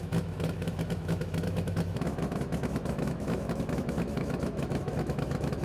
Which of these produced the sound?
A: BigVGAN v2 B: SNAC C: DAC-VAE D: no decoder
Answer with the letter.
C